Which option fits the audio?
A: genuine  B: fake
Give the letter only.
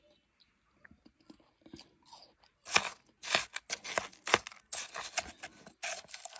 A